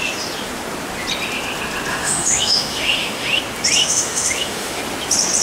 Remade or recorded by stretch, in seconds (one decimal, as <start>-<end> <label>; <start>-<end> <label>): 0.0-1.9 recorded; 1.9-3.4 remade; 3.4-3.8 recorded; 3.8-4.8 remade; 4.8-5.4 recorded